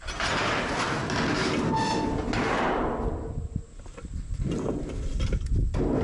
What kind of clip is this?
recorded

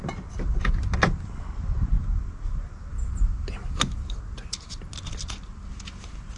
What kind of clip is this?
recorded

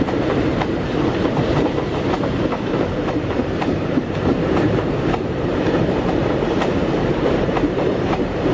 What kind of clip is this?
remade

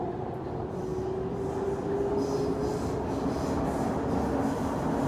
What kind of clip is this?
recorded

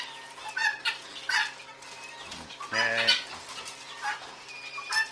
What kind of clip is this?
recorded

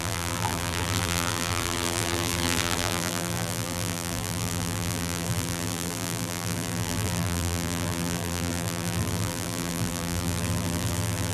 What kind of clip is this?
remade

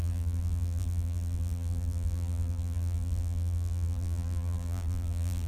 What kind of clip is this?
remade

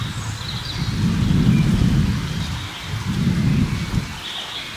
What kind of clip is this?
recorded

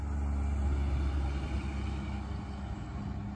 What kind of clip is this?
recorded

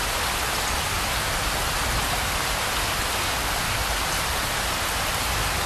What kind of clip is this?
recorded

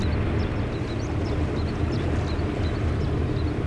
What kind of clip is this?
recorded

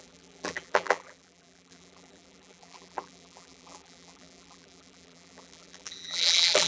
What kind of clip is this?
remade